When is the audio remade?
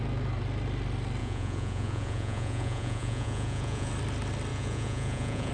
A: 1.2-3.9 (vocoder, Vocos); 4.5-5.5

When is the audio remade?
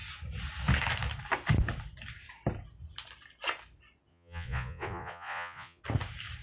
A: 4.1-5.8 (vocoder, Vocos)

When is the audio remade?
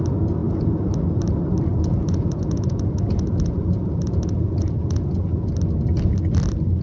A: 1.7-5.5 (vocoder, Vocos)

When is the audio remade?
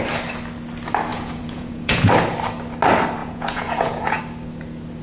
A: 1.1-2.1 (vocoder, Vocos); 3.2-4.2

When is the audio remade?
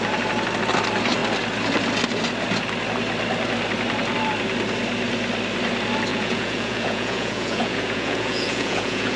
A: 6.1-9.2 (vocoder, Vocos)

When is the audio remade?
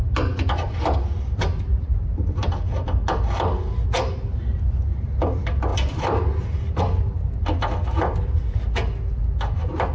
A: none